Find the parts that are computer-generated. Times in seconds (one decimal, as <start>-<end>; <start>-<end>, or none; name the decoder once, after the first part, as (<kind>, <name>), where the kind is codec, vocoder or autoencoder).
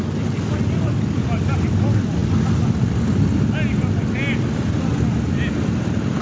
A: none